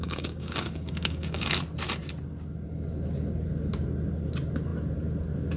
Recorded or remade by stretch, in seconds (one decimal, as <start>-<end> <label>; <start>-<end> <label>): 0.0-1.6 remade; 1.6-5.6 recorded